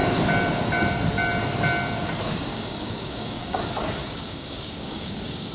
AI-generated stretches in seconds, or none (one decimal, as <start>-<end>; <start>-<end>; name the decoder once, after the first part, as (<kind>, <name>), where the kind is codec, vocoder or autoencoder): 2.5-3.6 (codec, DAC); 4.0-5.5